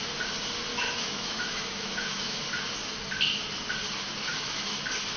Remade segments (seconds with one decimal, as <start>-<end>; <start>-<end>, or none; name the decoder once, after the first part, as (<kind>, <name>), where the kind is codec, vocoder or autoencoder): 0.7-2.4 (autoencoder, DAC-VAE); 4.3-4.8